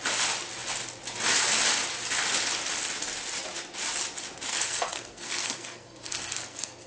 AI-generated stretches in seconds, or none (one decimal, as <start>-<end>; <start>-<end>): 4.5-6.9